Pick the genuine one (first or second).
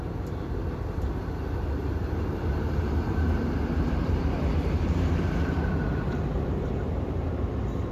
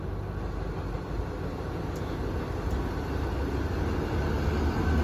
second